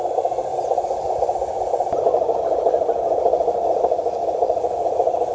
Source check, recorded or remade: recorded